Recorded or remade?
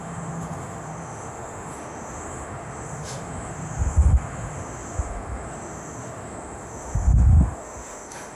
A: remade